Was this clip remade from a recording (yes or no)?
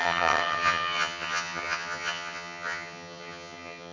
yes